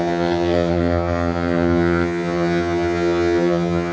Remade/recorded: remade